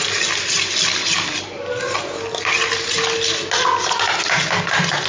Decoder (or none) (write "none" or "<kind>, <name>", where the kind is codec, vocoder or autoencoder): none